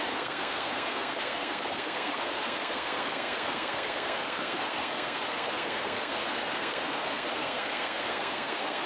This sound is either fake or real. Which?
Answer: fake